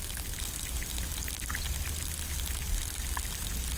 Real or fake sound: real